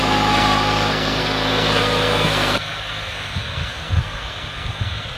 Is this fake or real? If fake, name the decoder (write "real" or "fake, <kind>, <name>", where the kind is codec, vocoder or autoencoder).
fake, codec, SNAC